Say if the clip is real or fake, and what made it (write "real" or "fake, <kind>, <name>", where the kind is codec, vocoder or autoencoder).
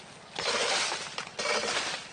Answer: real